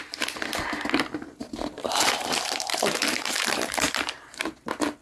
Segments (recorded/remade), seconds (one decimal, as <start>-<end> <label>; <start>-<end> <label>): 0.0-1.4 recorded; 1.4-4.4 remade; 4.4-5.0 recorded